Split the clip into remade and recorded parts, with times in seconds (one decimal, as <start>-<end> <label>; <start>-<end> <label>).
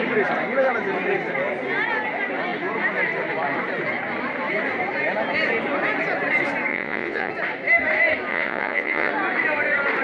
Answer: 0.0-6.7 recorded; 6.7-7.3 remade; 7.3-8.3 recorded; 8.3-9.1 remade; 9.1-10.0 recorded